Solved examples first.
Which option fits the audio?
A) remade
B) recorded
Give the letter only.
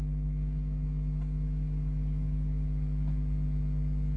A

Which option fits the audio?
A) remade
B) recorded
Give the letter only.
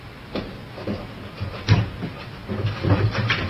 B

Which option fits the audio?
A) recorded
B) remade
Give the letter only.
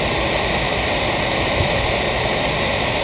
A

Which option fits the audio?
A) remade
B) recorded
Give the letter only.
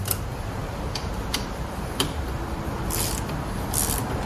A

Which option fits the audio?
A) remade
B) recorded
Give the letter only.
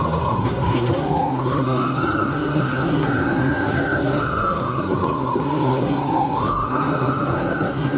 A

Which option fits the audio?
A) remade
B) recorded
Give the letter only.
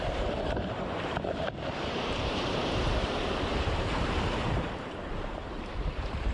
A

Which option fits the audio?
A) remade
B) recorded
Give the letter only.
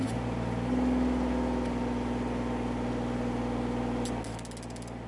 B